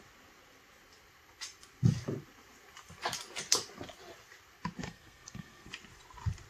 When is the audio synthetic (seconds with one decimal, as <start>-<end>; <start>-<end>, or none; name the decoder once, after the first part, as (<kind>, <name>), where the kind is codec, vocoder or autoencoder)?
4.8-5.7 (codec, SNAC)